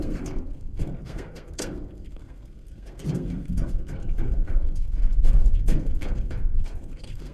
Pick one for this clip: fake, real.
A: fake